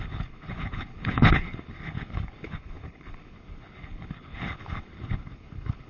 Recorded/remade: remade